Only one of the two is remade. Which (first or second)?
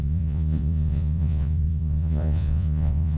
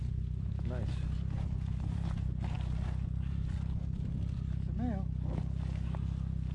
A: first